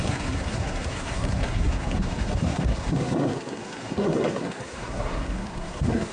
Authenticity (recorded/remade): remade